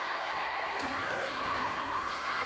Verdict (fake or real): fake